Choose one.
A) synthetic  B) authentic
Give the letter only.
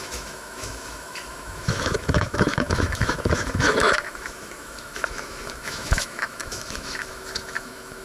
A